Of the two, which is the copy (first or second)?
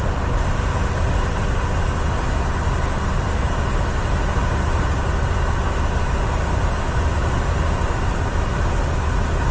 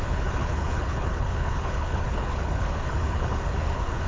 second